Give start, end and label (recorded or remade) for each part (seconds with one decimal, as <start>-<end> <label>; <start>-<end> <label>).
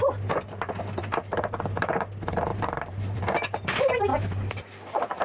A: 0.0-2.5 recorded; 2.5-3.2 remade; 3.2-4.1 recorded; 4.1-5.2 remade